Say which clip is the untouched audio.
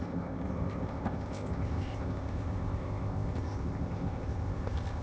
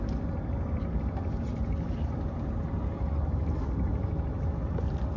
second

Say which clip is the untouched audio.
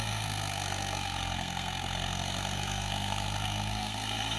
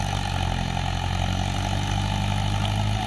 second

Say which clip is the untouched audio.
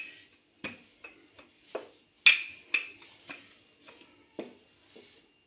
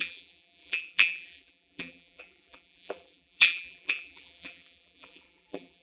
first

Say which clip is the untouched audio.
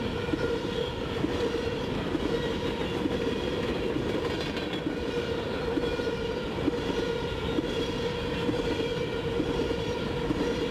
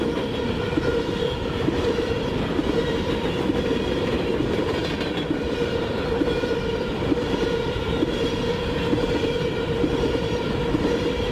first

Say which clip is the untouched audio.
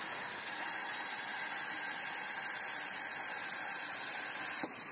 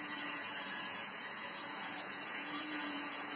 first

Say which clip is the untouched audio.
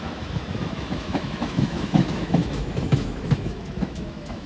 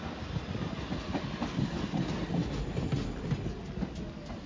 second